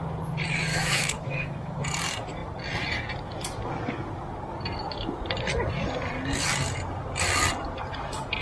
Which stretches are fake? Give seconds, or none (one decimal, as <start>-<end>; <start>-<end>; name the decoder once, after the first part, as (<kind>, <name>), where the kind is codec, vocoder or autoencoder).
0.7-1.8 (autoencoder, DAC-VAE)